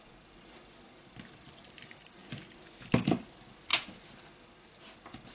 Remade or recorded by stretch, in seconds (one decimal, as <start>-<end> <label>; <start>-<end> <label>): 0.0-5.3 recorded